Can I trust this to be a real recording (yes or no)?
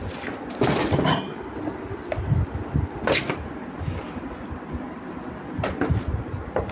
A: yes